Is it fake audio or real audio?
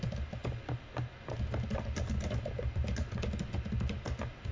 real